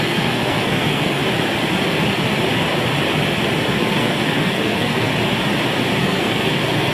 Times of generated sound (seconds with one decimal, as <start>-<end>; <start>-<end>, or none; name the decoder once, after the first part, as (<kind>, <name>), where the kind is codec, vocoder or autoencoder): 0.0-1.2 (codec, SNAC); 3.9-5.1; 6.0-6.9